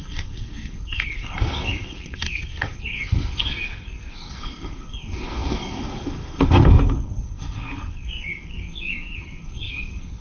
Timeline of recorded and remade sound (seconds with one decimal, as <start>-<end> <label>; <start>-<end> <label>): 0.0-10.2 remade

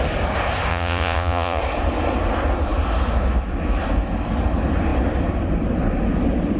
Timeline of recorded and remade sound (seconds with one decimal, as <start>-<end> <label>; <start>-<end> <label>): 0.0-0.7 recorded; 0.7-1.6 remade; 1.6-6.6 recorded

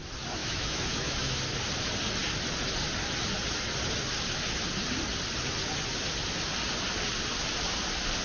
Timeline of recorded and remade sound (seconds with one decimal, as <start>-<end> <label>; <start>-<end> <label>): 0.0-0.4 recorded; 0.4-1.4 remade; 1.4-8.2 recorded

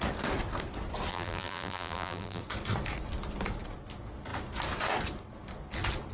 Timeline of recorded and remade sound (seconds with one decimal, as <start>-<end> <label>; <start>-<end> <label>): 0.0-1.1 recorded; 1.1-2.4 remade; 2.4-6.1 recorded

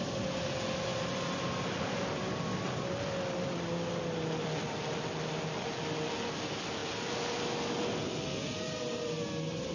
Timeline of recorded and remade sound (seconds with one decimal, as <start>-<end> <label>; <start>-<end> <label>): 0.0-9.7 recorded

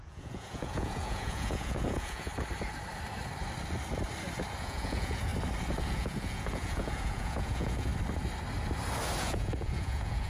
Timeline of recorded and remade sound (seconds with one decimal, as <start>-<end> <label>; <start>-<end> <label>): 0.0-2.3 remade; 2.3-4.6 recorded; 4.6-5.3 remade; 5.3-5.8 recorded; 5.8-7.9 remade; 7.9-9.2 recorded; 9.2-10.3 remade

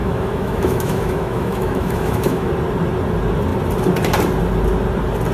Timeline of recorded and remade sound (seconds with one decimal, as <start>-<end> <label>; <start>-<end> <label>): 0.0-2.5 remade; 2.5-5.3 recorded

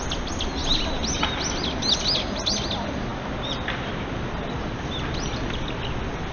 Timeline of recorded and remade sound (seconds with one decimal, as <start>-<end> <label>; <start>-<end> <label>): 0.0-6.3 recorded